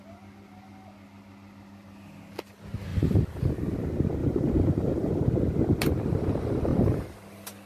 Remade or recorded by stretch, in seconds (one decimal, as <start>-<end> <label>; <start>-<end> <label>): 0.0-2.9 recorded; 2.9-3.4 remade; 3.4-4.2 recorded; 4.2-5.1 remade; 5.1-7.7 recorded